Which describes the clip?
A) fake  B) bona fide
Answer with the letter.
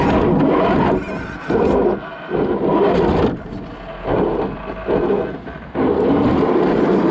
B